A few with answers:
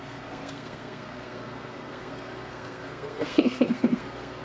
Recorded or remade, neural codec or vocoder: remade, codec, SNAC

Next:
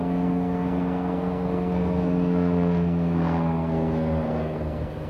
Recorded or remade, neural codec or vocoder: remade, codec, SNAC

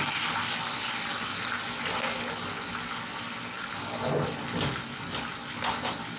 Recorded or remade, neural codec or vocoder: recorded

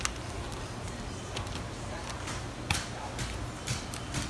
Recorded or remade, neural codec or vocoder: recorded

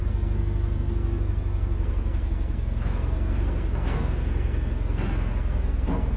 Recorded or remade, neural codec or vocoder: remade, codec, SNAC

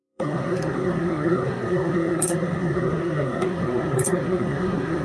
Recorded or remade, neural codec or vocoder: remade, codec, SNAC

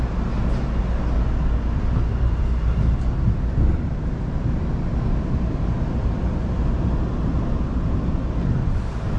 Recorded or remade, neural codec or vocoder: recorded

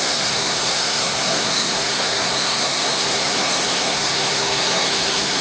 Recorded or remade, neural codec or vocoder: remade, codec, SNAC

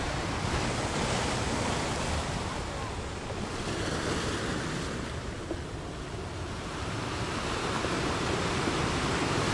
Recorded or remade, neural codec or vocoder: recorded